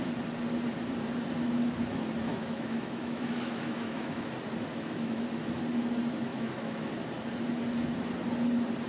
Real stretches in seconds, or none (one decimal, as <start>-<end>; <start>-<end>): 0.0-2.3; 4.3-4.7; 5.2-6.3; 6.9-8.9